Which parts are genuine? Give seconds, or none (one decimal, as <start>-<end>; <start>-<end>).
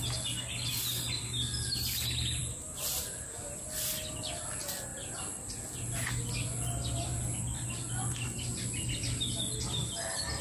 0.0-10.4